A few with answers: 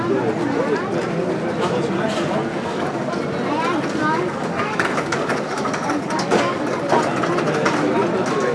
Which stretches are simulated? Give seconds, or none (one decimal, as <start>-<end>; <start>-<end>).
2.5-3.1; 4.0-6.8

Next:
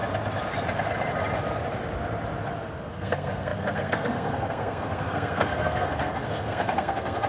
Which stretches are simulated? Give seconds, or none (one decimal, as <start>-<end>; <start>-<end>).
2.9-7.3

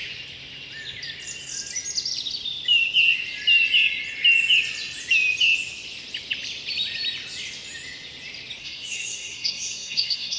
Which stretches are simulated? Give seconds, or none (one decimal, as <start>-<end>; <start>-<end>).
8.6-10.4